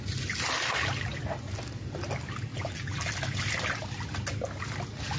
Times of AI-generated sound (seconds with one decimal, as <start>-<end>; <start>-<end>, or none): 2.5-3.1